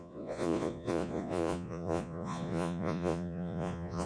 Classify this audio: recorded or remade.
remade